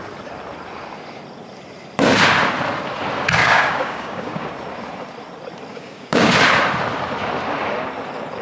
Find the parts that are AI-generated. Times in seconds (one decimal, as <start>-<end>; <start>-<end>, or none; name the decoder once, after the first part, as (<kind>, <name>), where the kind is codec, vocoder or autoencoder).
3.4-4.5 (codec, DAC); 5.7-6.3